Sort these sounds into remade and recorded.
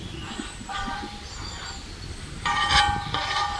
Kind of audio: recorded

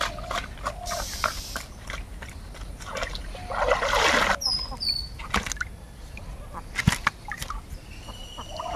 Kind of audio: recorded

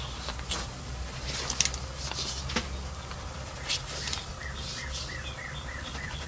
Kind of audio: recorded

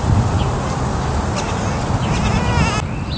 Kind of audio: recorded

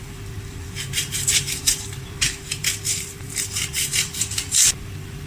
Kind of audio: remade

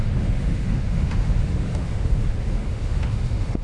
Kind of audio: remade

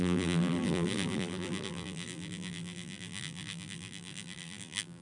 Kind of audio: remade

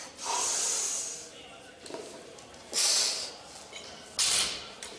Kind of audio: recorded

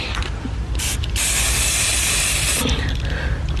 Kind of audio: recorded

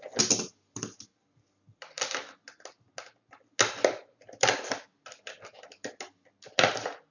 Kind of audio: recorded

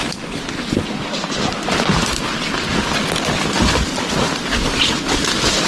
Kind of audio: recorded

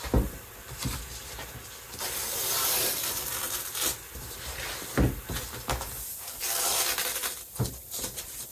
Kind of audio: recorded